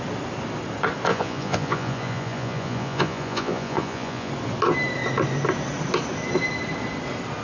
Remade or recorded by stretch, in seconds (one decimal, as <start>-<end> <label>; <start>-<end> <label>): 0.0-1.1 recorded; 1.1-4.3 remade; 4.3-7.4 recorded